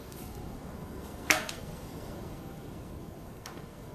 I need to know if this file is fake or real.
fake